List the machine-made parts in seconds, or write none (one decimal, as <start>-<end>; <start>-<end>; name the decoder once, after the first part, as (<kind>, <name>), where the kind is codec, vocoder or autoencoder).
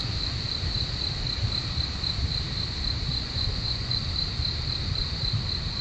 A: 3.1-4.0 (vocoder, Vocos)